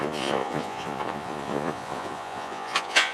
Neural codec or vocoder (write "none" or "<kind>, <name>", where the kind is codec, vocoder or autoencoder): vocoder, Vocos